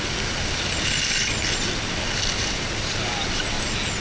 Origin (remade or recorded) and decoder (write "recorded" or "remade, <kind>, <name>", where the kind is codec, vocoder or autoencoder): recorded